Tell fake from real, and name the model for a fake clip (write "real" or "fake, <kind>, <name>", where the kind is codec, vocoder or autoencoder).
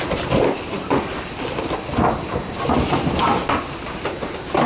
real